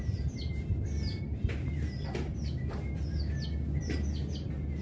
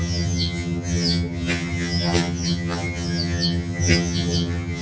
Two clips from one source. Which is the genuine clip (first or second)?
first